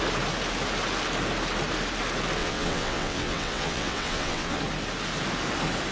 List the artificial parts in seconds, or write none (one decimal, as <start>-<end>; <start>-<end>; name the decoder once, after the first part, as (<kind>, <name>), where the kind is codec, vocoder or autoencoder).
2.4-4.6 (vocoder, WaveNeXt)